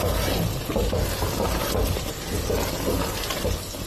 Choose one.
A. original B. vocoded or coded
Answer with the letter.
A